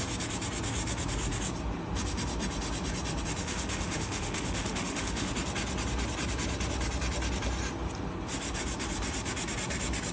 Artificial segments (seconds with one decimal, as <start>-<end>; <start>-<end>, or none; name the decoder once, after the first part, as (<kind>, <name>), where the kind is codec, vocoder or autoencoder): 3.4-5.3 (autoencoder, DAC-VAE)